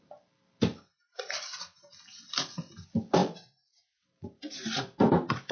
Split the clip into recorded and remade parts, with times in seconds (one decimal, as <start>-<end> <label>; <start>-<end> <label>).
0.0-0.7 recorded; 0.7-1.9 remade; 1.9-3.2 recorded; 3.2-4.5 remade; 4.5-5.5 recorded